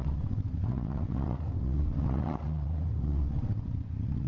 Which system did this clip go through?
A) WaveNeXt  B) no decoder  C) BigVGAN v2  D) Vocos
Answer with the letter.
A